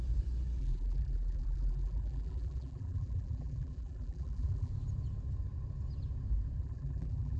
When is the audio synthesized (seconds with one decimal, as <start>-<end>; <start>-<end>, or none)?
0.6-4.7; 6.6-7.4